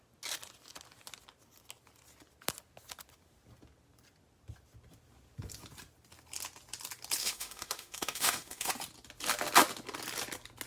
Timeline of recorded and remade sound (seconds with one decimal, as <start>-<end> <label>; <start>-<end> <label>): 0.0-7.2 recorded; 7.2-8.7 remade; 8.7-10.7 recorded